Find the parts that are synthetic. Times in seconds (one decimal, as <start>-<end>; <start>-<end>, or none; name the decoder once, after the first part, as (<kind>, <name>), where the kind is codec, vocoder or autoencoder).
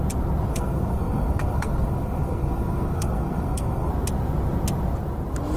0.5-3.9 (codec, SNAC)